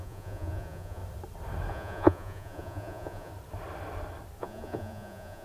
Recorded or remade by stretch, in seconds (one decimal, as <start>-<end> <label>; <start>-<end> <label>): 0.0-1.0 remade; 1.0-1.7 recorded; 1.7-3.3 remade; 3.3-4.4 recorded; 4.4-5.4 remade